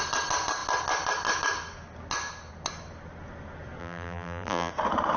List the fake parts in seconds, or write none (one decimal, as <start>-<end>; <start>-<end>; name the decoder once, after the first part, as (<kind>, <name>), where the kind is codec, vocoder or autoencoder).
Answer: 3.8-4.7 (vocoder, BigVGAN v2)